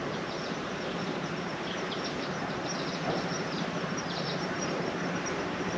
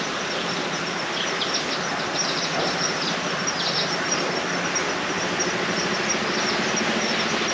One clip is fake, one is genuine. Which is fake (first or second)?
first